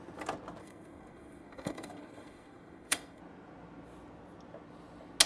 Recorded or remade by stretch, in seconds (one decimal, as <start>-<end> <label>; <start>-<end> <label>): 0.0-0.6 recorded; 0.6-3.2 remade; 3.2-5.3 recorded